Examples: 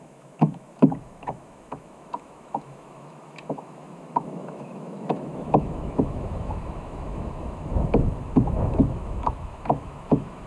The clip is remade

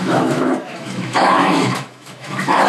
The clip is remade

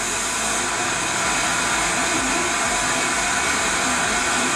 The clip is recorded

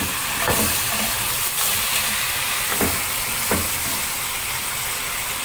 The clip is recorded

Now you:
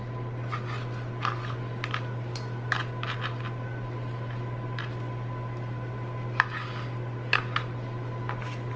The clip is recorded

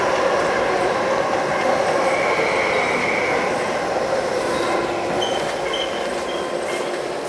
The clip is recorded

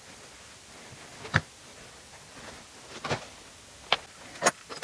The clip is recorded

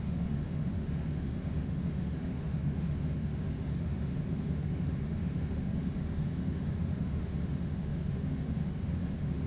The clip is remade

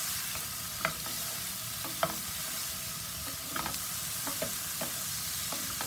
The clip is recorded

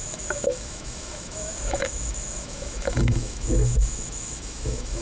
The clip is remade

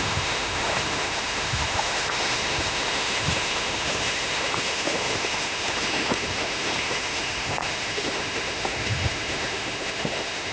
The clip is remade